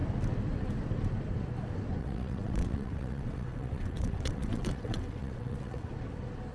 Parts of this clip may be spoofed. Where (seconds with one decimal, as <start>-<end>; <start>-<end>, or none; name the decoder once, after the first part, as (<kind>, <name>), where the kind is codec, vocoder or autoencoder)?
2.0-5.9 (vocoder, WaveNeXt)